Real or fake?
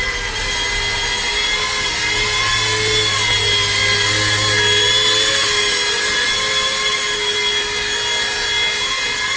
real